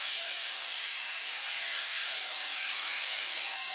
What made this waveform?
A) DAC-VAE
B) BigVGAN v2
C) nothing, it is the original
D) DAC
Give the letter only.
D